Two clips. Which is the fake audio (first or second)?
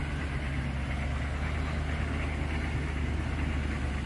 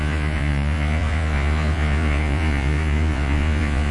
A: second